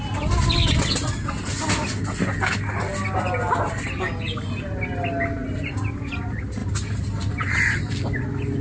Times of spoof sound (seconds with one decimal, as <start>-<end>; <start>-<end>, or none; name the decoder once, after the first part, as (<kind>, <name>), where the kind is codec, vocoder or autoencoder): 5.4-6.1 (vocoder, BigVGAN v2); 6.6-7.9